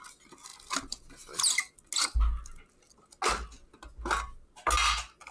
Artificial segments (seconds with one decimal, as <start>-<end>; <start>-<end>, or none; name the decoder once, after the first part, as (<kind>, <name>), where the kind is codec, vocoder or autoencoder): none